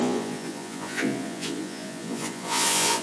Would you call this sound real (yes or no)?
no